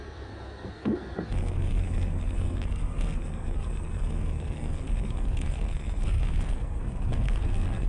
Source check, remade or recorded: remade